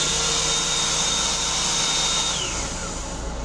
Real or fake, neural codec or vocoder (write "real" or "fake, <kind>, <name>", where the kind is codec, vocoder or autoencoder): real